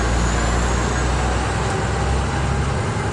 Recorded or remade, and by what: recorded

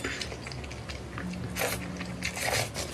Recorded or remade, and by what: recorded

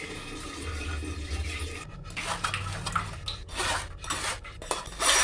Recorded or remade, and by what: recorded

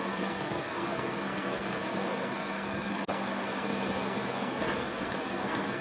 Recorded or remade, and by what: remade, codec, SNAC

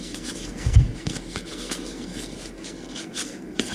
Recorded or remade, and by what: remade, codec, SNAC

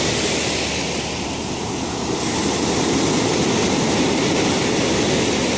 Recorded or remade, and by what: recorded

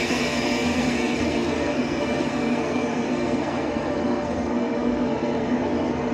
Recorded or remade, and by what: remade, codec, SNAC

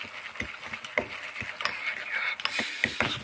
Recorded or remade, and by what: recorded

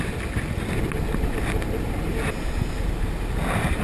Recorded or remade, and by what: recorded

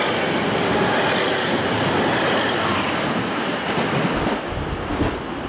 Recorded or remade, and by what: recorded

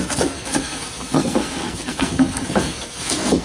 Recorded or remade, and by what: remade, codec, SNAC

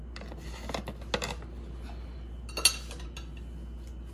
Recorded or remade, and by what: recorded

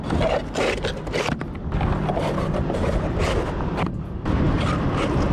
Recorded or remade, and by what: recorded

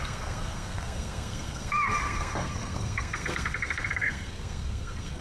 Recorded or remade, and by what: remade, codec, SNAC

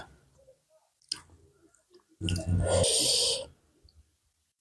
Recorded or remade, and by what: recorded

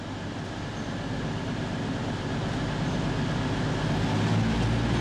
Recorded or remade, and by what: recorded